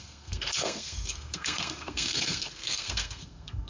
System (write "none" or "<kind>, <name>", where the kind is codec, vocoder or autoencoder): codec, SNAC